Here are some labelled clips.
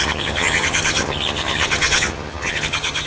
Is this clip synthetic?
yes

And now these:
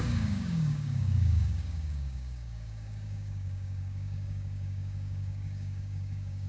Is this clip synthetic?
yes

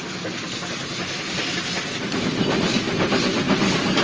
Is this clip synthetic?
yes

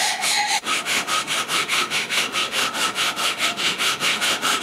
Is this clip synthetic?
yes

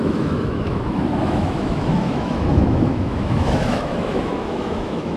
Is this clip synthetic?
yes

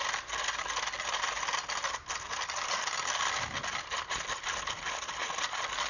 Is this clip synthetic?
no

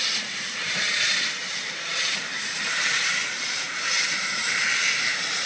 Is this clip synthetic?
yes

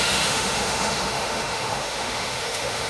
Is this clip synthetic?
yes